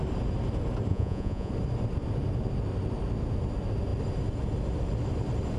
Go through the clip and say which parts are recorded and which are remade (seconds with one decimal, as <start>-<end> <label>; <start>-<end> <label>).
0.0-0.9 recorded; 0.9-1.5 remade; 1.5-5.6 recorded